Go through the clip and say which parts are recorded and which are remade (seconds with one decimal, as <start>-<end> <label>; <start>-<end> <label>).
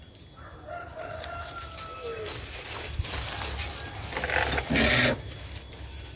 0.0-6.2 recorded